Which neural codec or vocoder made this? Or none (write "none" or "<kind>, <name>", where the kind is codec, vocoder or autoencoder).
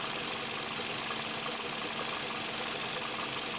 none